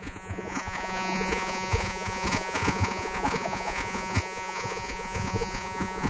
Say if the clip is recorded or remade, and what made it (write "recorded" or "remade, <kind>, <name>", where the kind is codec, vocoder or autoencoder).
remade, vocoder, Vocos